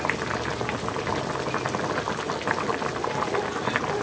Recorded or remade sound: recorded